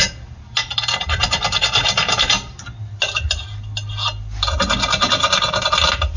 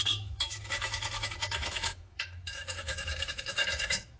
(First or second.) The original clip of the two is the first